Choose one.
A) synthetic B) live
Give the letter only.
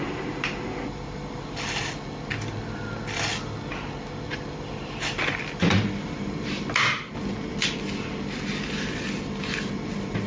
B